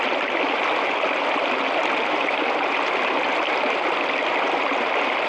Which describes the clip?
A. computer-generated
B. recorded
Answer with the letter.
B